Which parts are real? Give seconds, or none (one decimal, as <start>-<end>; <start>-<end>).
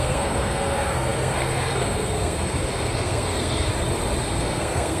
3.7-4.2